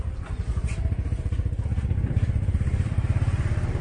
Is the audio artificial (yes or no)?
yes